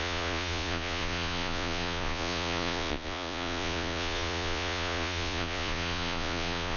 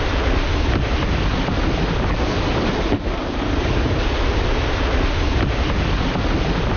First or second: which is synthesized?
first